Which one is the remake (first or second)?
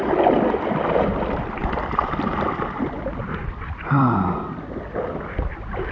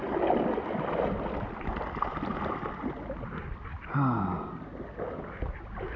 first